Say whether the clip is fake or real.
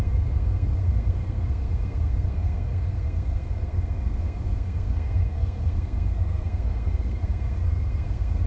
fake